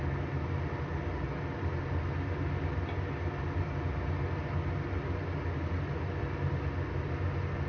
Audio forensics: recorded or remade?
recorded